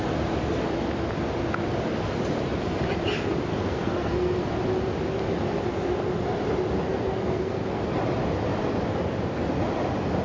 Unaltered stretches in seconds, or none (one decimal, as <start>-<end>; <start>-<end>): 0.0-3.5; 4.5-6.8; 7.8-10.2